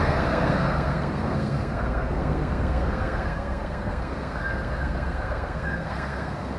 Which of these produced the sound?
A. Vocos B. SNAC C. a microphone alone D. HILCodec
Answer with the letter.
B